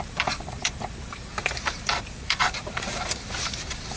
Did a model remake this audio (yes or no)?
yes